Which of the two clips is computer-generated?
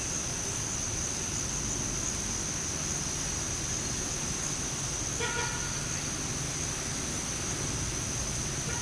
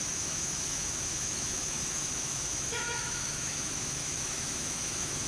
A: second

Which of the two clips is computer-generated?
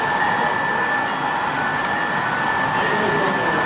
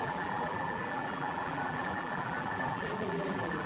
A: second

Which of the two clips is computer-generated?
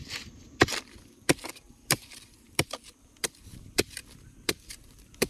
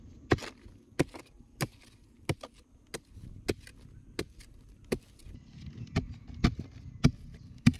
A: first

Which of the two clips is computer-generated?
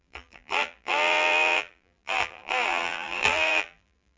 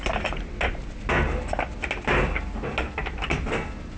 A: first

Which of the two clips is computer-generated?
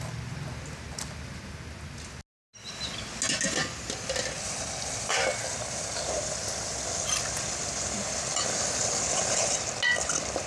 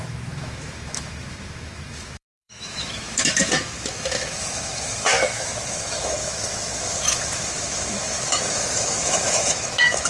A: second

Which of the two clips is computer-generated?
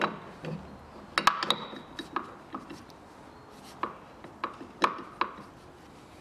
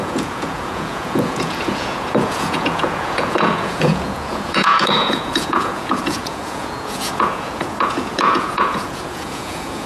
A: second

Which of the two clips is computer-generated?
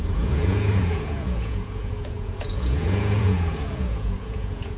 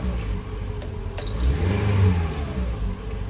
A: first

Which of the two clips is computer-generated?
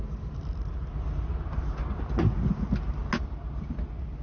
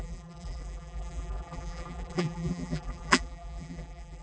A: second